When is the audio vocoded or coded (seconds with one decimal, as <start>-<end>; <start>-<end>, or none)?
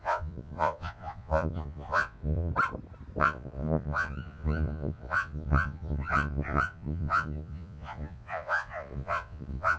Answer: 0.0-2.5; 3.2-9.8